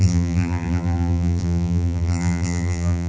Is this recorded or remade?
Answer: remade